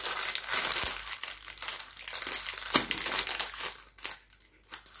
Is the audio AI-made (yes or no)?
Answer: no